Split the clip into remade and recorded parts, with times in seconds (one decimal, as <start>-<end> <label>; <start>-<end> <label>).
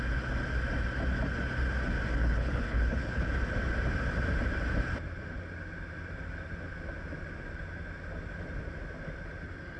0.0-2.2 recorded; 2.2-3.2 remade; 3.2-9.8 recorded